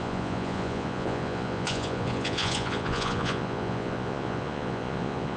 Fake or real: fake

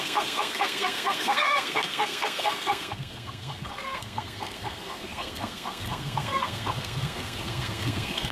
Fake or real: fake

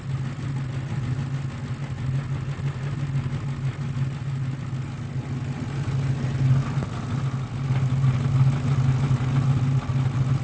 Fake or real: real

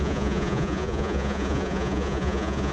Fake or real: fake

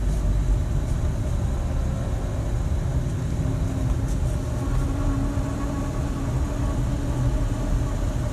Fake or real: real